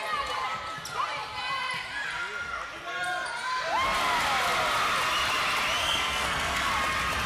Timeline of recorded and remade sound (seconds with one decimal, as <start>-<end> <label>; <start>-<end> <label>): 0.0-5.8 recorded; 5.8-6.7 remade; 6.7-7.3 recorded